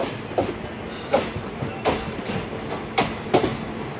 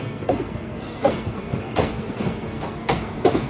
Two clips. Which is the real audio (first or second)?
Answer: first